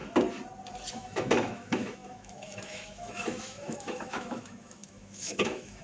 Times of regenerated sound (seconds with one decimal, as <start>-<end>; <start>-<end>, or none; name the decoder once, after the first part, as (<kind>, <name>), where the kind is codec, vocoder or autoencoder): 0.9-5.8 (autoencoder, DAC-VAE)